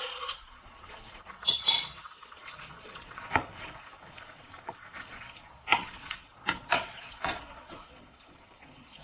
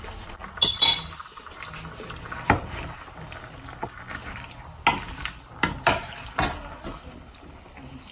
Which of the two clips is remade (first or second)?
first